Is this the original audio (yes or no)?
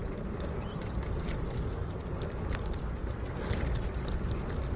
yes